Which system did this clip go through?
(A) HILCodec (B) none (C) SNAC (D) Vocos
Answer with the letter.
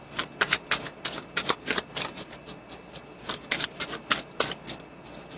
B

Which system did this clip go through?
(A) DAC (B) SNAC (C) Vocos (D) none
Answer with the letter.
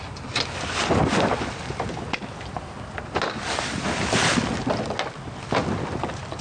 D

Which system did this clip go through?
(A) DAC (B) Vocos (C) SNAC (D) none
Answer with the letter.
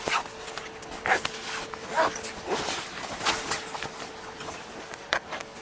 D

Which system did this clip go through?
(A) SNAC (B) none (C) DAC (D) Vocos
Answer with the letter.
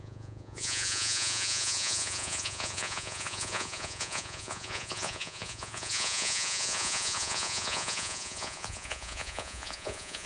D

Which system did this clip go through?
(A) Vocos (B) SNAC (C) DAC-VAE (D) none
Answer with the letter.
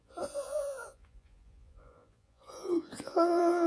A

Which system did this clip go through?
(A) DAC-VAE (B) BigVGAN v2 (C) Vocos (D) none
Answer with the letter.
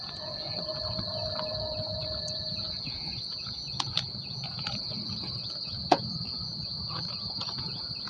C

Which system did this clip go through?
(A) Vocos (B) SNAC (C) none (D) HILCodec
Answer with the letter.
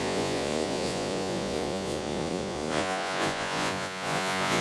A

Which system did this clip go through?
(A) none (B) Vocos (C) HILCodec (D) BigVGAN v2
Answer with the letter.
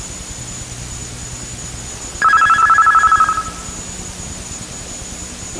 A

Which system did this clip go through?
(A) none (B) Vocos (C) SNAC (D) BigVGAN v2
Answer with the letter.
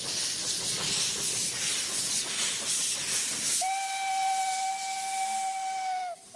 A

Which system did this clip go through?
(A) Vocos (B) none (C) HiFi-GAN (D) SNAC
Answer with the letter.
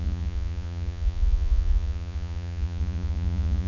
A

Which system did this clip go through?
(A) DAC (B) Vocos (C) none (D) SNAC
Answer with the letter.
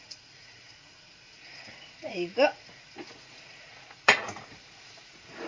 B